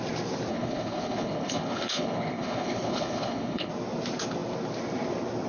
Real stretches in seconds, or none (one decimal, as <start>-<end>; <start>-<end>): 0.0-0.5; 3.7-5.5